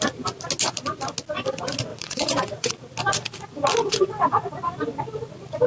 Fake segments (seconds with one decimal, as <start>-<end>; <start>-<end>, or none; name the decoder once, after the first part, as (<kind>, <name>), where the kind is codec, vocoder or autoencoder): 1.9-2.7 (vocoder, WaveNeXt); 3.8-4.5